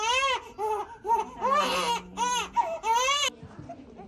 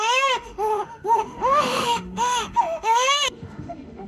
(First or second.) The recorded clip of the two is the first